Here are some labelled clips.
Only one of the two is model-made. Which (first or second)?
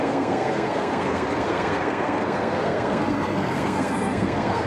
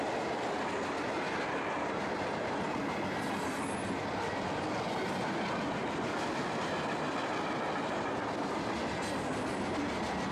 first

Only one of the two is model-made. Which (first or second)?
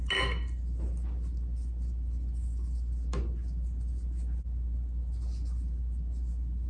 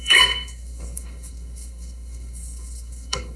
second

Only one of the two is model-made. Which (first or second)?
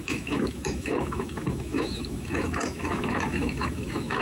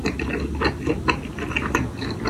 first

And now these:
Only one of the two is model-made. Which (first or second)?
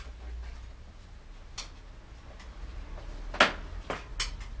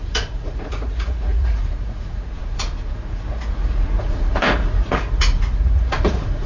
second